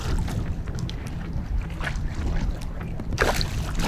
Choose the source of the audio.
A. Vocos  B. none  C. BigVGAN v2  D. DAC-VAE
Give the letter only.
B